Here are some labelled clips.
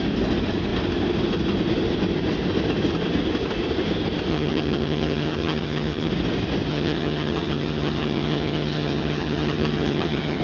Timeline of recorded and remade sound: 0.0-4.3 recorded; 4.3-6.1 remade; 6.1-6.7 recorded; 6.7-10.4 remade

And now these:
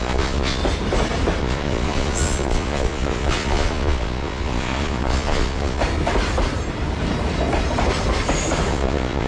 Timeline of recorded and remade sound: 0.0-0.6 remade; 0.6-1.4 recorded; 1.4-5.8 remade; 5.8-8.7 recorded; 8.7-9.3 remade

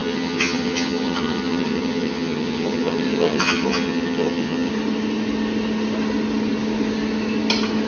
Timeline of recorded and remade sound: 0.0-4.7 remade; 4.7-7.9 recorded

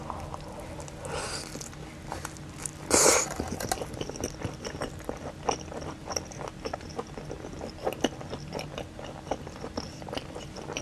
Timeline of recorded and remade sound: 0.0-10.8 recorded